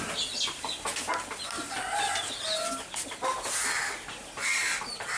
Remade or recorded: recorded